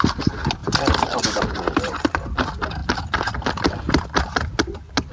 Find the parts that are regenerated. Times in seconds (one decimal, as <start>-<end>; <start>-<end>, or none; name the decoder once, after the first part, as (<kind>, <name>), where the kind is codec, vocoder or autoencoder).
none